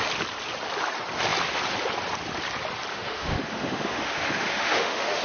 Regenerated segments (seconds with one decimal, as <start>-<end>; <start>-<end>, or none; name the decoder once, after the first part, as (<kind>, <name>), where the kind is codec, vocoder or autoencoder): 2.9-5.2 (autoencoder, DAC-VAE)